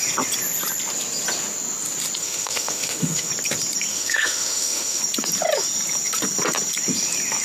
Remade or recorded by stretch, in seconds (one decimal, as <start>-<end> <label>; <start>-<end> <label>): 0.0-2.2 recorded; 2.2-3.3 remade; 3.3-3.9 recorded; 3.9-5.0 remade; 5.0-7.4 recorded